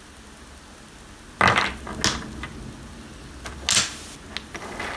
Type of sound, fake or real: real